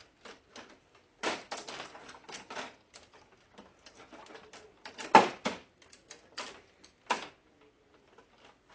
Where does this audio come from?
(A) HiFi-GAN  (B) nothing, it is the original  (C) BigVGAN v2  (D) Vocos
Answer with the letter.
B